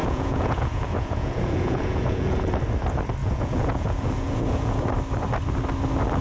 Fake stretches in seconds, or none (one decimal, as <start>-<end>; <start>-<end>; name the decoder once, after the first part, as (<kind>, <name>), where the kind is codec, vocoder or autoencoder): 0.0-2.5 (vocoder, Vocos); 3.2-4.8